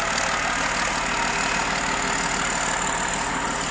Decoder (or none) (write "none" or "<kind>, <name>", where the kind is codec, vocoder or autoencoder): none